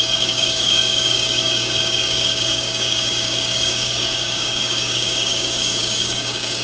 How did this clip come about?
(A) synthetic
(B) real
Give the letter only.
A